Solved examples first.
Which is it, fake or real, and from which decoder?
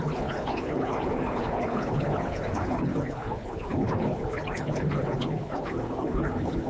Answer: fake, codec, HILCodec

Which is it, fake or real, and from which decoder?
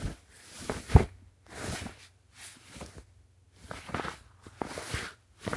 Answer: real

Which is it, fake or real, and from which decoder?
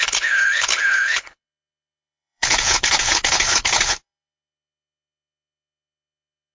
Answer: fake, codec, HILCodec